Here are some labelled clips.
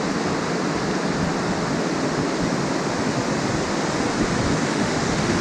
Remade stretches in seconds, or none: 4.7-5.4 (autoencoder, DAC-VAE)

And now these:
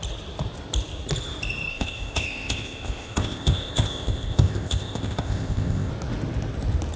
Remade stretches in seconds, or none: 1.7-5.9 (codec, ZipCodec)

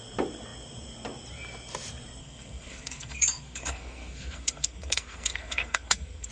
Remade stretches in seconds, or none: 2.2-6.3 (codec, SNAC)

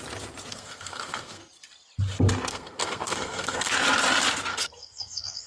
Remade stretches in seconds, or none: 0.5-1.4 (codec, SNAC); 2.5-3.7; 4.5-5.5

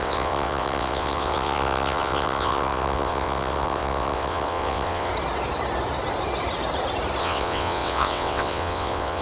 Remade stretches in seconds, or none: 0.0-5.1 (vocoder, WaveNeXt); 7.2-9.2

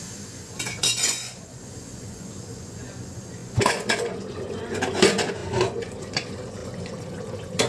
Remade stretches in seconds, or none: 0.0-7.7 (vocoder, Vocos)

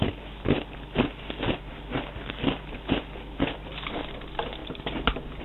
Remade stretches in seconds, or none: none

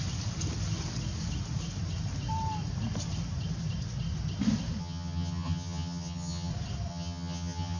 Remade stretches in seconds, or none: 4.8-6.5 (vocoder, HiFi-GAN); 6.9-7.8